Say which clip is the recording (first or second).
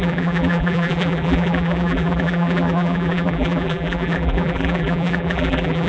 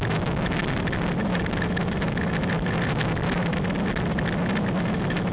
second